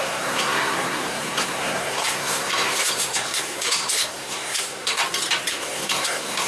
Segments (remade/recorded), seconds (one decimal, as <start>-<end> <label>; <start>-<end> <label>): 0.0-5.0 remade; 5.0-5.5 recorded; 5.5-6.5 remade